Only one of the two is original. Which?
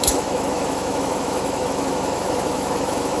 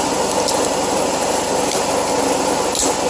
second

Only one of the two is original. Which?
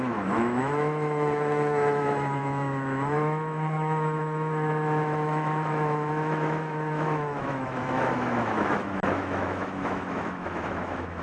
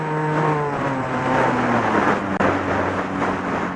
second